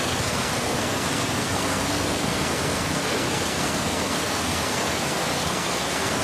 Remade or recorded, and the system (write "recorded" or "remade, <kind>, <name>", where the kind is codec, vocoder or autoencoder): remade, codec, SNAC